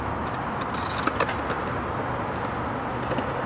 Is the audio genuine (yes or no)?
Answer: yes